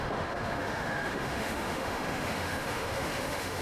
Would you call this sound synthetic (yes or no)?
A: yes